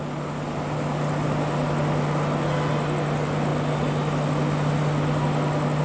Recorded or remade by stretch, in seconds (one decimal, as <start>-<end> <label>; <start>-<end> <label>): 0.0-5.8 recorded